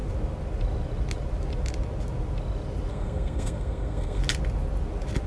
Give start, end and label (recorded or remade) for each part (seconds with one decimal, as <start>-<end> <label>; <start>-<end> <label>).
0.0-2.9 recorded; 2.9-4.2 remade; 4.2-5.3 recorded